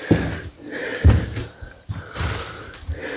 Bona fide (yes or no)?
yes